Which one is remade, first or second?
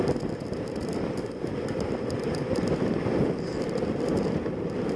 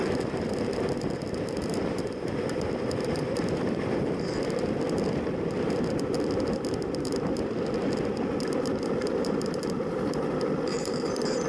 second